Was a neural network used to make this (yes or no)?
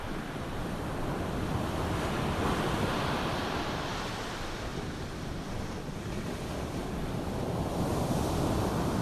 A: no